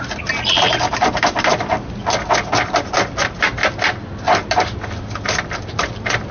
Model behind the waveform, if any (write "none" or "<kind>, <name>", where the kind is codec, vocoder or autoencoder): none